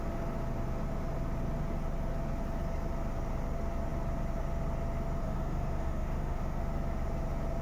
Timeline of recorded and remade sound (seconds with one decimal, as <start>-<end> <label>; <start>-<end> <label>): 0.0-5.2 recorded; 5.2-6.6 remade; 6.6-7.6 recorded